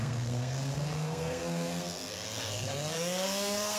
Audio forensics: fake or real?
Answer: fake